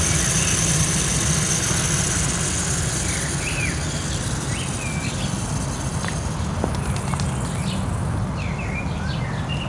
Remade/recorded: recorded